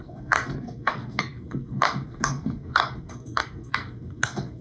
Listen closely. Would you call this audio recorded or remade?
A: remade